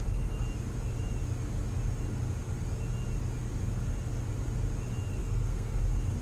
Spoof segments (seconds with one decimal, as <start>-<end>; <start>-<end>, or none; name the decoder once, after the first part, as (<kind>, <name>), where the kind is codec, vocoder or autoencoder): 5.2-5.8 (codec, SNAC)